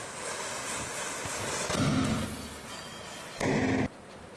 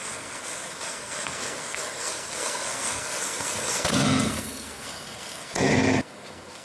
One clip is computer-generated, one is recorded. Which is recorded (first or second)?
first